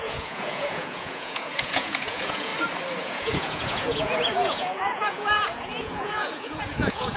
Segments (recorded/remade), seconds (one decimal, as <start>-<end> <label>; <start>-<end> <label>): 0.0-2.5 remade; 2.5-3.0 recorded; 3.0-7.2 remade